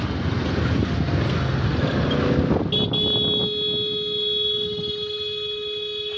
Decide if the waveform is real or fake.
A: real